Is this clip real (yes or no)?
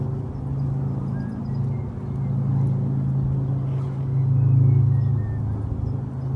yes